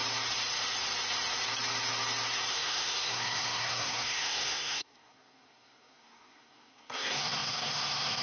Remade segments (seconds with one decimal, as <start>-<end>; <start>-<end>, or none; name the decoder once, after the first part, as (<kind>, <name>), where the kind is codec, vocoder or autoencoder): 2.5-8.2 (codec, SNAC)